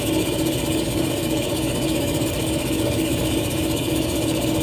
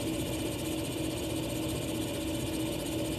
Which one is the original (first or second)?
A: second